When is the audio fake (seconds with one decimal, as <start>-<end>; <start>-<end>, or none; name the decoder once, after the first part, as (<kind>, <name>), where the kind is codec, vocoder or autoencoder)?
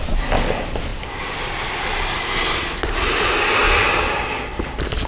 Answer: none